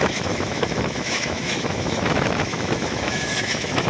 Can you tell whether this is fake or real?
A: fake